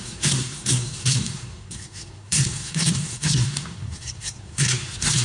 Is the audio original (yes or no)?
no